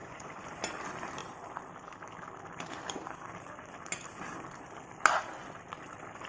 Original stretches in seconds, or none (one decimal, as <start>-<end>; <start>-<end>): 0.6-6.3